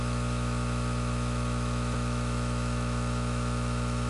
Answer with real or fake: fake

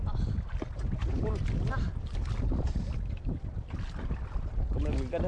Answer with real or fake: real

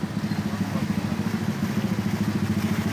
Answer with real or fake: real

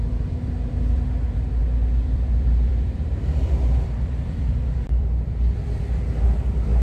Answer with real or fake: fake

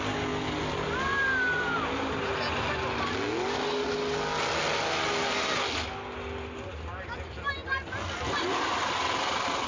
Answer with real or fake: real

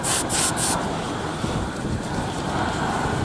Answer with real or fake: real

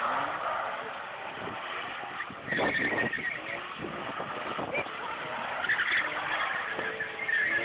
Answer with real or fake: real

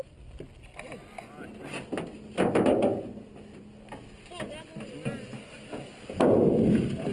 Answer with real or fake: real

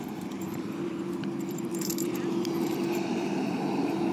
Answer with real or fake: fake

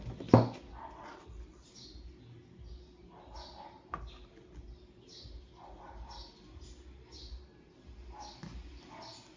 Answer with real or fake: real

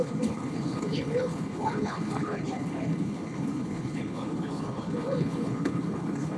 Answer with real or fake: fake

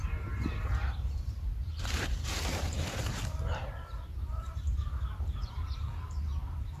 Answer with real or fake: fake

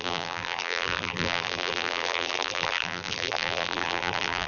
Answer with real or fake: fake